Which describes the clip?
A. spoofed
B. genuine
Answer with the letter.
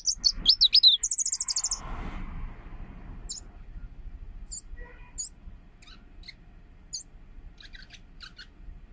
B